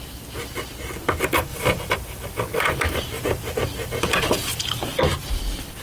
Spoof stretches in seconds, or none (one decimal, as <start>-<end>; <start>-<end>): 1.5-5.0